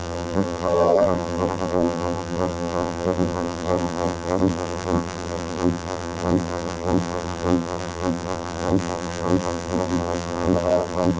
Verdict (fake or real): fake